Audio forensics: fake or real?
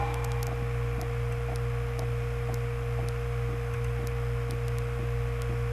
real